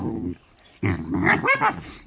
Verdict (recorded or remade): recorded